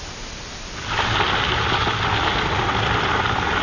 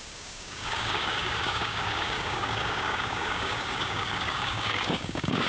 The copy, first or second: second